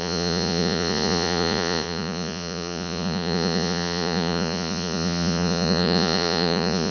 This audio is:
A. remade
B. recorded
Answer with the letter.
A